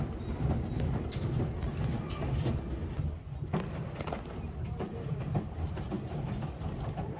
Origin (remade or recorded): recorded